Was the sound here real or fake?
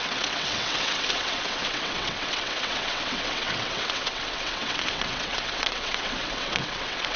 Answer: fake